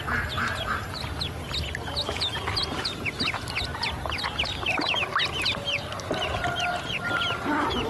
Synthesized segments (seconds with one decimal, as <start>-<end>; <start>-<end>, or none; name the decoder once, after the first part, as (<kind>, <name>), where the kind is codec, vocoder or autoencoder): none